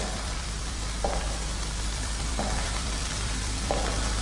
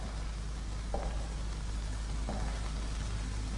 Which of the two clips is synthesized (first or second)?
first